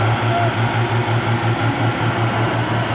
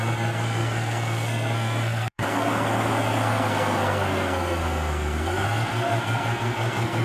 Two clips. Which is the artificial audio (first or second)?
second